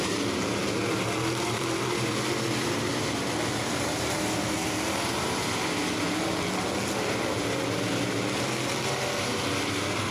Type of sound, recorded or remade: recorded